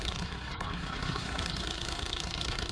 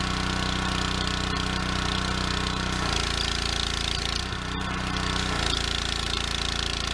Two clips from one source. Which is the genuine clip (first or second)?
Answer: second